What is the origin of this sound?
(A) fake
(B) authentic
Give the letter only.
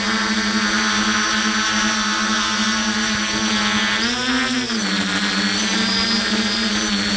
B